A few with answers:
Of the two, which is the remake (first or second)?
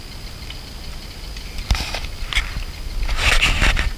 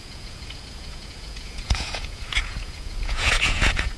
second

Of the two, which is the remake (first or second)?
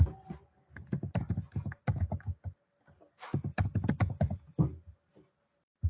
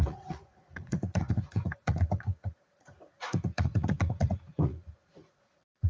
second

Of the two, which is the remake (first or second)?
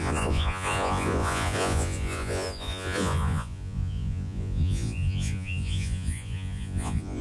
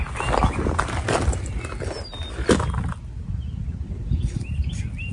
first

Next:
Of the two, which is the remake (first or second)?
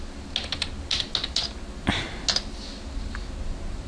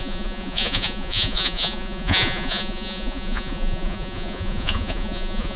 second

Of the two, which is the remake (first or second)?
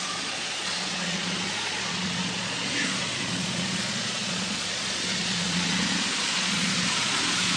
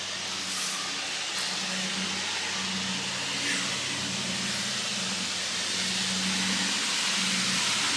first